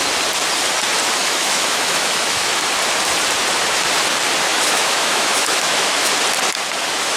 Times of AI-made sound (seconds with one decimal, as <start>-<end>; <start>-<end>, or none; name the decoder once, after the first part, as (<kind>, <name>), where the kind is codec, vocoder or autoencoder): 1.2-2.5 (autoencoder, DAC-VAE); 4.5-6.1

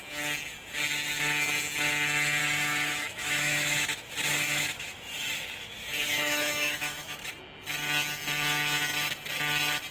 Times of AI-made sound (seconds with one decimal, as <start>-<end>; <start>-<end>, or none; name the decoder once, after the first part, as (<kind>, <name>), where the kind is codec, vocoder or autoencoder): 2.4-7.3 (autoencoder, DAC-VAE)

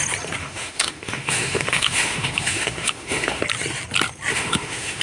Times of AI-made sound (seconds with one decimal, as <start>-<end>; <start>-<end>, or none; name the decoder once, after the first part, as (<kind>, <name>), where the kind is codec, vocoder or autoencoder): 0.4-3.4 (autoencoder, DAC-VAE); 4.3-5.0

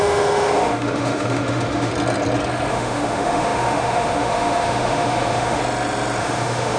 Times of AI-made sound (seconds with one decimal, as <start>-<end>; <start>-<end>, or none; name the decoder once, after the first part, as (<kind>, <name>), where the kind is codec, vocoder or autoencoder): 0.0-1.9 (autoencoder, DAC-VAE); 2.7-5.6; 6.2-6.8

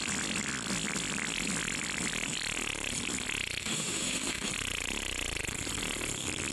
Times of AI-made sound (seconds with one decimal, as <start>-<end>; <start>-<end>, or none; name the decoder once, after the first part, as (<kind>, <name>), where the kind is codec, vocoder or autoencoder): 3.6-4.5 (autoencoder, DAC-VAE)

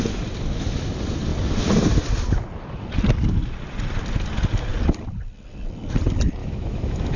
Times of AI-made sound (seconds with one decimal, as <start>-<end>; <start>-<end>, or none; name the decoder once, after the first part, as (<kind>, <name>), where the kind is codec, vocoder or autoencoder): 6.4-7.2 (autoencoder, DAC-VAE)

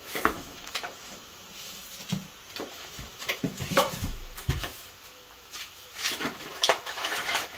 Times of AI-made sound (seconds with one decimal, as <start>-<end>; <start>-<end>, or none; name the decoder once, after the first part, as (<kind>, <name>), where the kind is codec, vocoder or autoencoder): 0.0-1.8 (autoencoder, DAC-VAE); 2.7-7.6